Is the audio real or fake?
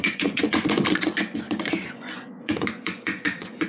fake